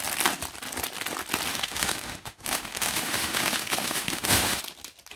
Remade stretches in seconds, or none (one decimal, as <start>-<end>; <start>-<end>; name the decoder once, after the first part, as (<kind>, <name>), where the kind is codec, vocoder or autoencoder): 1.5-4.6 (autoencoder, DAC-VAE)